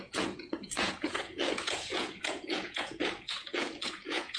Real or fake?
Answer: fake